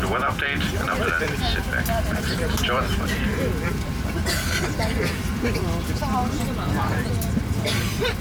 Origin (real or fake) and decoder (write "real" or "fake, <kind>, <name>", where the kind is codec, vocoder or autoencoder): fake, vocoder, BigVGAN v2